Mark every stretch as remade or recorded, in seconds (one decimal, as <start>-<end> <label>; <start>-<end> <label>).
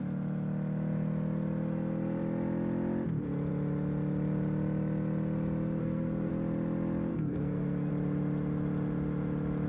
0.0-5.8 recorded; 5.8-6.3 remade; 6.3-7.1 recorded; 7.1-7.9 remade; 7.9-9.7 recorded